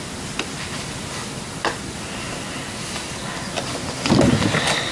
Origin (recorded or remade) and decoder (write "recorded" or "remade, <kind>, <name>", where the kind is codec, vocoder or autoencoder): recorded